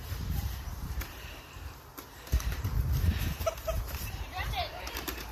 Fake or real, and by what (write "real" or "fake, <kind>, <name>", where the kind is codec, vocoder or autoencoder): fake, vocoder, BigVGAN v2